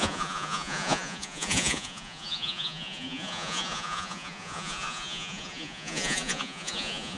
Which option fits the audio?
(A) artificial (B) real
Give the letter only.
A